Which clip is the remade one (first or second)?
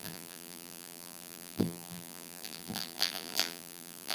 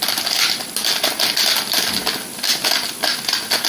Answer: first